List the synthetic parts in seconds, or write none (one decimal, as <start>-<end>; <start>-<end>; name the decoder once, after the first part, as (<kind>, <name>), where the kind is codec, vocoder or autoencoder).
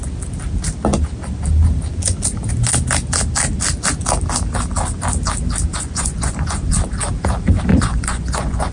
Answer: 5.7-6.7 (vocoder, Vocos); 7.7-8.7